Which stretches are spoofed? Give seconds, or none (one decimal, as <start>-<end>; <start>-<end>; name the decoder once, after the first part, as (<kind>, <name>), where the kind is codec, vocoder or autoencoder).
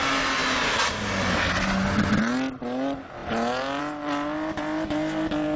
none